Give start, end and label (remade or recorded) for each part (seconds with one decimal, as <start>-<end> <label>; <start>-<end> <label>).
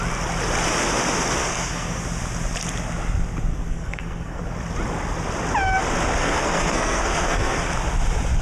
0.0-1.4 recorded; 1.4-2.0 remade; 2.0-3.5 recorded; 3.5-4.4 remade; 4.4-6.2 recorded; 6.2-7.7 remade; 7.7-8.4 recorded